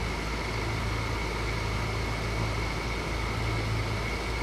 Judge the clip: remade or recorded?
recorded